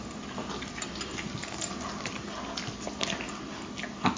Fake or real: real